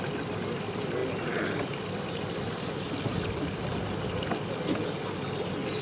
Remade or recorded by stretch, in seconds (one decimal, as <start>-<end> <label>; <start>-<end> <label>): 0.0-5.8 recorded